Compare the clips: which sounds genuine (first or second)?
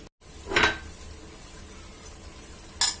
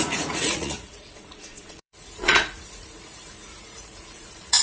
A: first